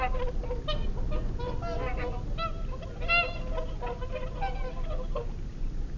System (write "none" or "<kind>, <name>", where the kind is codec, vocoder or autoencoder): none